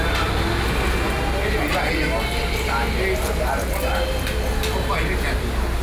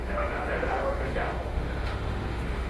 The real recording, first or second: first